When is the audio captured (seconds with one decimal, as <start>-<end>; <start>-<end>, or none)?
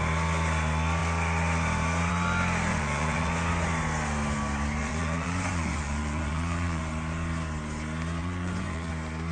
0.0-2.7; 3.3-4.8; 6.8-8.2; 8.9-9.3